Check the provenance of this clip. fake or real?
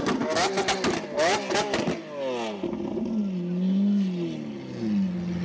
real